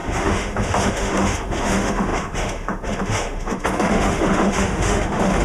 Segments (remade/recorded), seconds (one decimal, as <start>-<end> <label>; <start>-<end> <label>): 0.0-5.4 remade